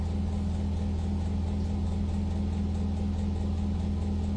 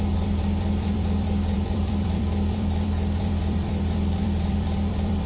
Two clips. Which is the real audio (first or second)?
first